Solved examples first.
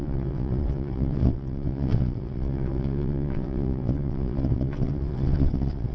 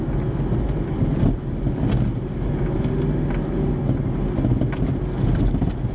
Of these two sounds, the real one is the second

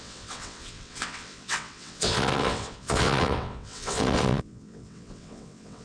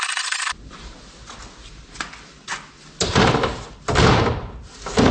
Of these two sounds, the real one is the second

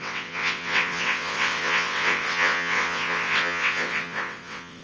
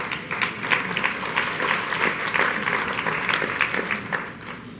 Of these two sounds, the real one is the second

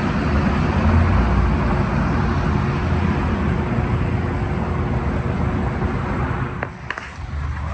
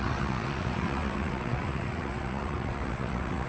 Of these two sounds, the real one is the first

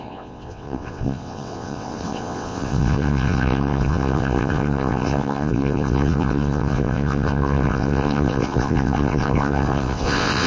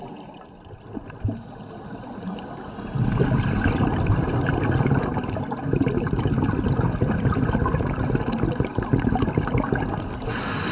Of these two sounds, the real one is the second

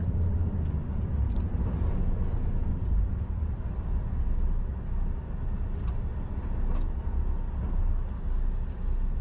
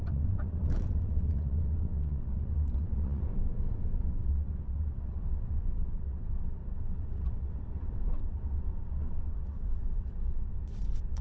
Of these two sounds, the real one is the first